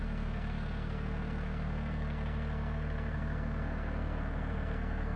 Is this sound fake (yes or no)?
yes